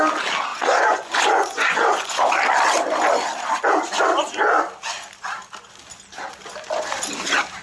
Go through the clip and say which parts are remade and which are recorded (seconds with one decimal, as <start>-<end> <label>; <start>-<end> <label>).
0.0-0.5 recorded; 0.5-2.3 remade; 2.3-7.6 recorded